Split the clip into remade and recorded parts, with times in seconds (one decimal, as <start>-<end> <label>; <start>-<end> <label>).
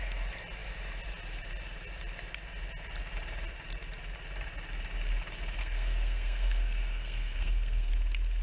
0.0-5.6 recorded; 5.6-7.9 remade; 7.9-8.4 recorded